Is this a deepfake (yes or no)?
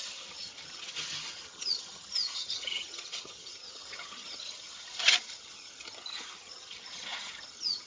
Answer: yes